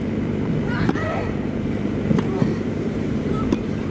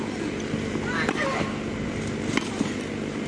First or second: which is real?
second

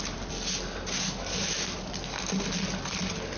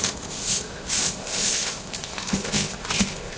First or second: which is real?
first